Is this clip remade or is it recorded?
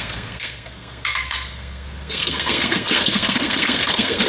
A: remade